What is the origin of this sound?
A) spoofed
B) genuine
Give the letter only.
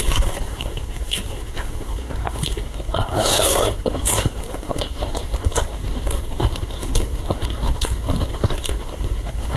A